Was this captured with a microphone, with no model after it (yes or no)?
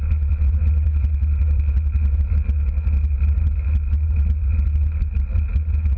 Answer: yes